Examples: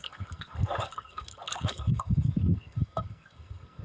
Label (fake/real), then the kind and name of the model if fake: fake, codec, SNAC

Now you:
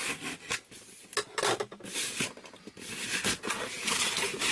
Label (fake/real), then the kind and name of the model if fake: real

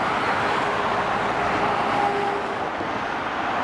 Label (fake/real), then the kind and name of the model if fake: real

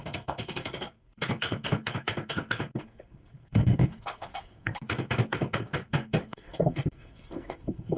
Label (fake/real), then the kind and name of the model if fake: fake, codec, SNAC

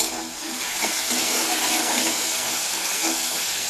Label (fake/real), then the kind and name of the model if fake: fake, codec, SNAC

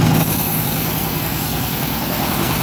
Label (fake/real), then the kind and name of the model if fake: fake, codec, SNAC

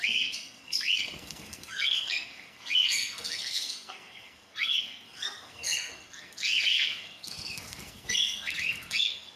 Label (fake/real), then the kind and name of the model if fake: fake, codec, SNAC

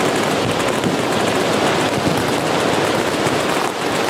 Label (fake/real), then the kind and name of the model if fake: real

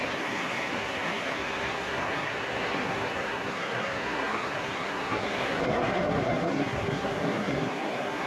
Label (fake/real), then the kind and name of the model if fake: fake, codec, SNAC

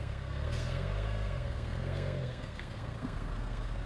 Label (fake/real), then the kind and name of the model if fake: fake, codec, SNAC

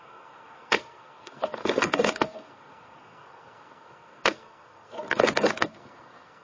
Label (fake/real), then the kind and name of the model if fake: fake, codec, SNAC